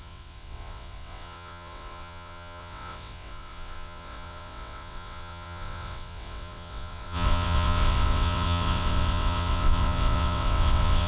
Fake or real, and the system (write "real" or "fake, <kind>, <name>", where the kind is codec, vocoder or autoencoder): fake, vocoder, WaveNeXt